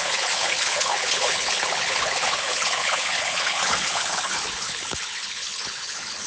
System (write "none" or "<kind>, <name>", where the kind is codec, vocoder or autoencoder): codec, HILCodec